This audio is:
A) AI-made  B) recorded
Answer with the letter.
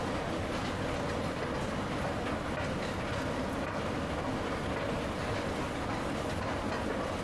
B